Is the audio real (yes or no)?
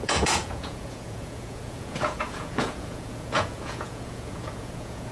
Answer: no